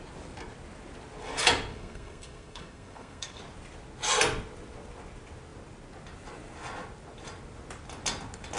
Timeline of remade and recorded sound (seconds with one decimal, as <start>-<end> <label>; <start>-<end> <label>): 0.0-1.7 recorded; 1.7-3.4 remade; 3.4-8.6 recorded